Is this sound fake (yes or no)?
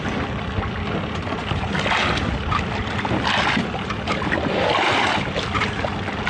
no